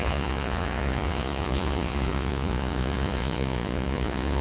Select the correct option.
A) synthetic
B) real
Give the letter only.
A